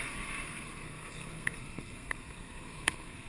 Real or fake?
fake